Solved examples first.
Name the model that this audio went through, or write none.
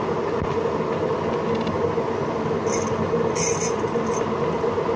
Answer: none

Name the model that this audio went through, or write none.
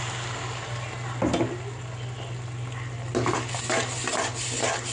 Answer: none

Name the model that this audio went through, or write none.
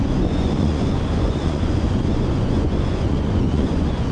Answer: vocoder, Vocos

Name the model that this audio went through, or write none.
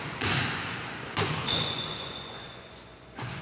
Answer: vocoder, Vocos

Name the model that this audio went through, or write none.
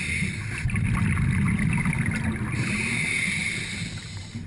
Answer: none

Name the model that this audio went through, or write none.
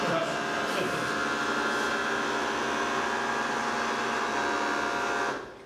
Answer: none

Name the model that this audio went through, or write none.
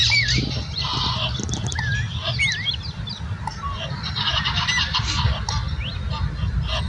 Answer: none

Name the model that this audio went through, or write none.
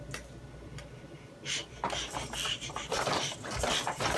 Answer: vocoder, BigVGAN v2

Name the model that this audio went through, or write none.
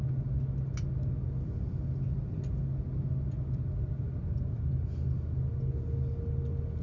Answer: none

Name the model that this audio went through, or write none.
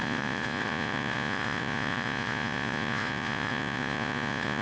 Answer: vocoder, Vocos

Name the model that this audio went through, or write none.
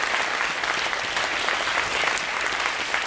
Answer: none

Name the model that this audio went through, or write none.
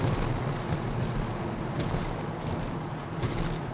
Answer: none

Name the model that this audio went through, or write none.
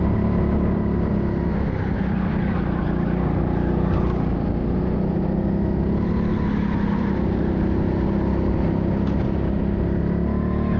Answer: none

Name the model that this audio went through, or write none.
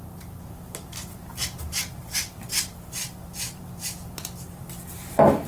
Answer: vocoder, BigVGAN v2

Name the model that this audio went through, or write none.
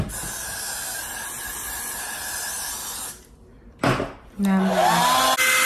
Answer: none